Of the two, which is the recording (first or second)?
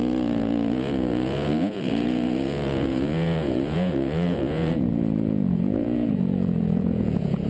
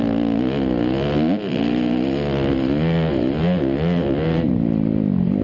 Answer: second